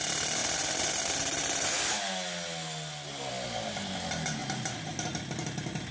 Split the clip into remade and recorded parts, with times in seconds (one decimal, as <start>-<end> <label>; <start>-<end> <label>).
0.0-5.9 recorded